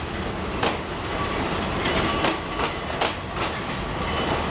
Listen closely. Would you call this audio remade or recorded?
recorded